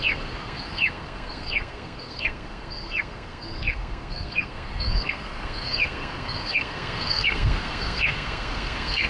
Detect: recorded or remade remade